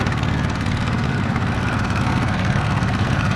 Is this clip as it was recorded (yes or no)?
no